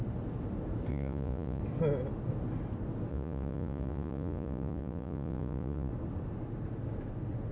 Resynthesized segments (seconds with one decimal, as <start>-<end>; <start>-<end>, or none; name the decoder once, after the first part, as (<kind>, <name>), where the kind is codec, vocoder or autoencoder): 0.9-1.6 (vocoder, Vocos); 3.1-5.9